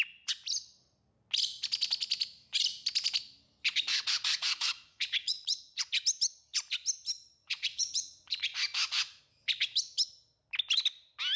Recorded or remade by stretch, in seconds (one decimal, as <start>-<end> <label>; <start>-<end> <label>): 0.0-3.9 recorded; 3.9-5.9 remade; 5.9-7.4 recorded; 7.4-9.2 remade; 9.2-11.4 recorded